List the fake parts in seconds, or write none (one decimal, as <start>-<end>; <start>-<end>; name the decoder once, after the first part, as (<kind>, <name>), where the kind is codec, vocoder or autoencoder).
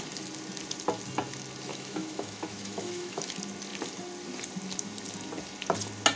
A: 1.7-3.3 (autoencoder, DAC-VAE)